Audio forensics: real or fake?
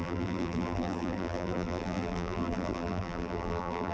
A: fake